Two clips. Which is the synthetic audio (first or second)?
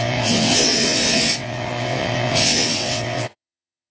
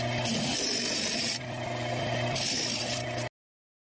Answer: first